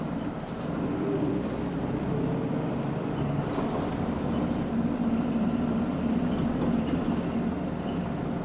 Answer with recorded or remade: remade